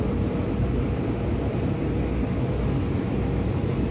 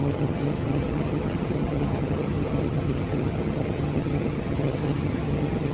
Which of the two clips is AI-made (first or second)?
second